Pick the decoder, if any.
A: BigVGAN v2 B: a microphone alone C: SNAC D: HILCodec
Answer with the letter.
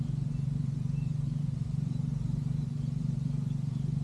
A